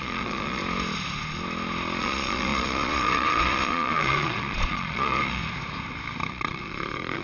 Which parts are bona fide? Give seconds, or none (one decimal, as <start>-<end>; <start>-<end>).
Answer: 0.6-2.0; 5.4-6.3